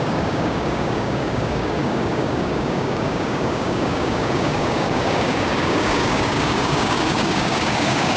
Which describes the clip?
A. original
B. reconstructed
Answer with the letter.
B